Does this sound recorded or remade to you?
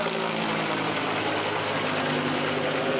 recorded